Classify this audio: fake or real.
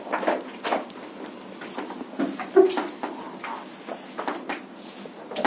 real